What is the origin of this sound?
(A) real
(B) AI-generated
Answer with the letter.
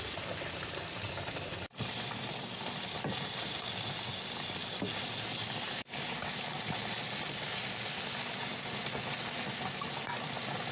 A